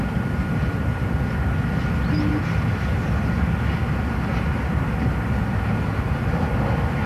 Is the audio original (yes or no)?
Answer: yes